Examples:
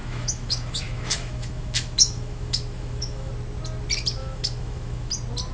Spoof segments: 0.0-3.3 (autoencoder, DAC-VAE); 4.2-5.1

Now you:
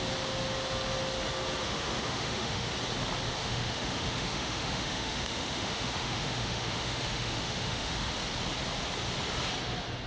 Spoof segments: 1.6-2.7 (autoencoder, DAC-VAE); 3.4-8.1